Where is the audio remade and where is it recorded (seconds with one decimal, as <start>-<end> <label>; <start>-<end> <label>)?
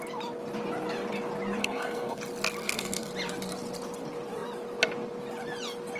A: 0.0-1.6 recorded; 1.6-2.2 remade; 2.2-2.6 recorded; 2.6-3.1 remade; 3.1-6.0 recorded